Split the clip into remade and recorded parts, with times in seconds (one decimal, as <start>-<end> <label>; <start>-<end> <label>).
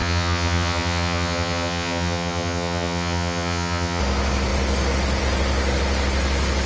0.0-4.0 remade; 4.0-6.7 recorded